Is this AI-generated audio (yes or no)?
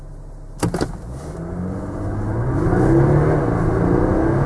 no